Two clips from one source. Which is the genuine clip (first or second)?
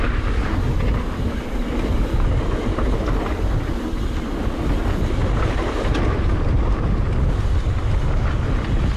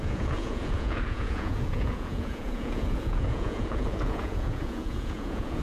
first